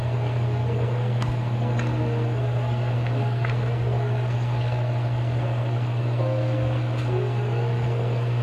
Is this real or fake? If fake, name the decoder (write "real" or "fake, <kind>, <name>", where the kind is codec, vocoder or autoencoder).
fake, codec, SNAC